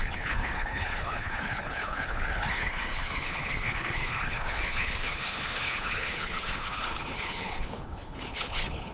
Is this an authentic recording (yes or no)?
no